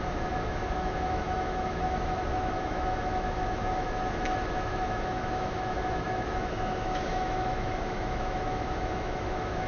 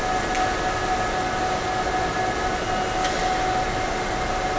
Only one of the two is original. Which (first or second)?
second